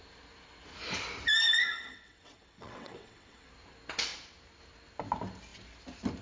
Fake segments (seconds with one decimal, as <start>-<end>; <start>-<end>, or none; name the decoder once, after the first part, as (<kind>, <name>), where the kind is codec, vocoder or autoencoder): 1.6-3.5 (vocoder, WaveNeXt)